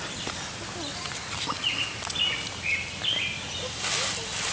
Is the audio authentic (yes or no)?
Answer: yes